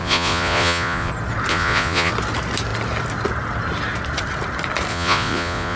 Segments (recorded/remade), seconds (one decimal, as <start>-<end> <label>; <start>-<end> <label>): 0.0-1.1 remade; 1.1-1.5 recorded; 1.5-2.1 remade; 2.1-4.9 recorded; 4.9-5.8 remade